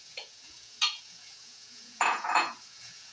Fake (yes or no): yes